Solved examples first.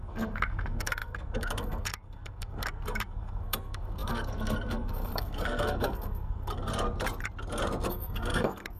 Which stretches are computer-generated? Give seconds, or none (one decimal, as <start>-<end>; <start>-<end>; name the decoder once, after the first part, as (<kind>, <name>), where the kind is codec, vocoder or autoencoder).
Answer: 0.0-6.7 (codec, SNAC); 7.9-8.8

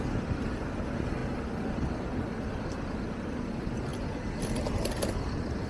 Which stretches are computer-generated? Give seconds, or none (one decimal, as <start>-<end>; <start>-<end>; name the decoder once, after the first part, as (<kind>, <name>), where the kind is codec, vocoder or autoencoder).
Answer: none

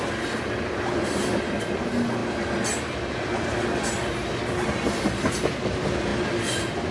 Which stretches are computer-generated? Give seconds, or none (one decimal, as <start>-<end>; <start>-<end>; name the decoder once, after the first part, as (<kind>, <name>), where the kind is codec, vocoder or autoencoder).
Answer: none

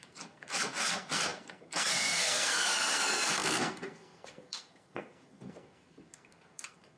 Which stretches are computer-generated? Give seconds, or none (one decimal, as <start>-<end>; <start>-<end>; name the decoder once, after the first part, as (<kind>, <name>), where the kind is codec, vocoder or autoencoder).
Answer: 0.0-7.0 (codec, SNAC)

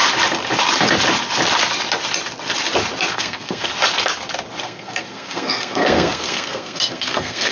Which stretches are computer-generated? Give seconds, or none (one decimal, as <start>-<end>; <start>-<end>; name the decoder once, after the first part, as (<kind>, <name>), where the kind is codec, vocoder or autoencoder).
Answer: 3.1-3.7 (codec, SNAC); 4.6-7.5